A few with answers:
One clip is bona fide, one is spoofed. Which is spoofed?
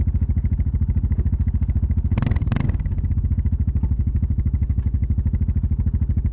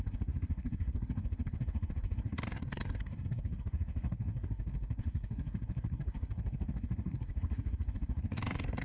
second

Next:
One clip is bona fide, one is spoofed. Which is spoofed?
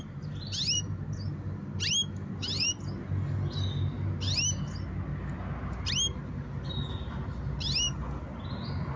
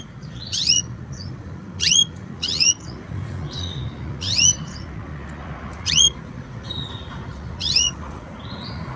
second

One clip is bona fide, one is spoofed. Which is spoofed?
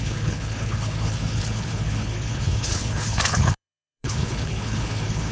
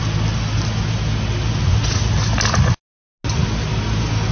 first